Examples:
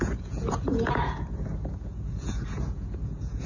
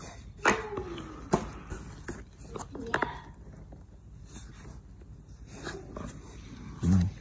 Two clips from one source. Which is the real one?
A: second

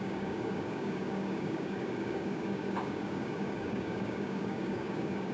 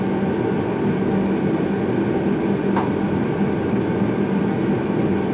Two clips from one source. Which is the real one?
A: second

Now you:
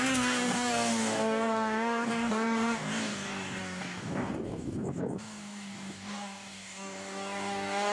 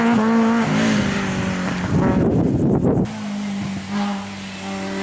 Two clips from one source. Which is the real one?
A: second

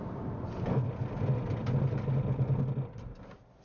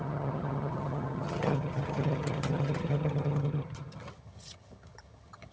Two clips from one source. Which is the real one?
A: first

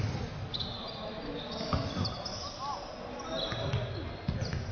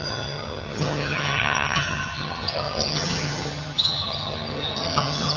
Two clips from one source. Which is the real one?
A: first